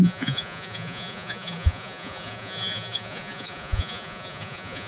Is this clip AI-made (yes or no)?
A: yes